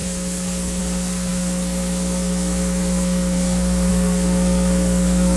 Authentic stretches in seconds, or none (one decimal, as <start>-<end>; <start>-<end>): none